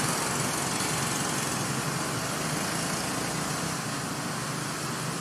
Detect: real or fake real